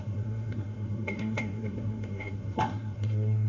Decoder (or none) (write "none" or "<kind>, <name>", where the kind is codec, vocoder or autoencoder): codec, SNAC